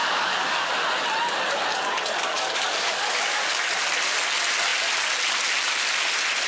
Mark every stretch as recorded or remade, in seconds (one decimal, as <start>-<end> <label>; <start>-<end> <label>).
0.0-0.7 remade; 0.7-1.7 recorded; 1.7-3.7 remade; 3.7-6.5 recorded